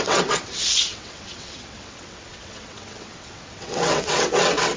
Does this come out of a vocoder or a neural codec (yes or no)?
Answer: yes